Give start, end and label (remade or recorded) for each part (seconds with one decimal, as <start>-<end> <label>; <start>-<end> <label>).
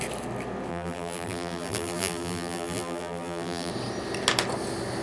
0.0-0.7 recorded; 0.7-3.7 remade; 3.7-5.0 recorded